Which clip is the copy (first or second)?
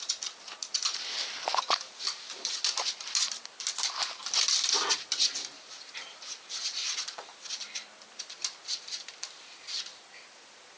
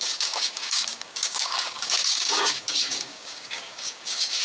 second